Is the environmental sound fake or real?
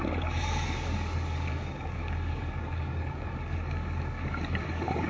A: fake